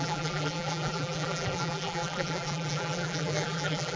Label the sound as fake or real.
fake